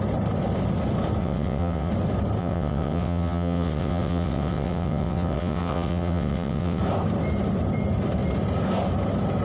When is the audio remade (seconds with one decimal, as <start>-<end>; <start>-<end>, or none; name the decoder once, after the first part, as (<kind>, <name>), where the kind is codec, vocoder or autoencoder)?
1.2-1.9 (vocoder, WaveNeXt); 2.4-6.8